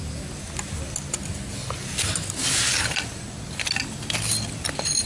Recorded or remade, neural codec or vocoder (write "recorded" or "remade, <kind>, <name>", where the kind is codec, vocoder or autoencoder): recorded